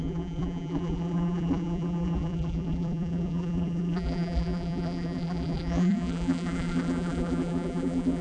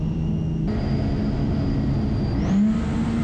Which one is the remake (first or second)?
first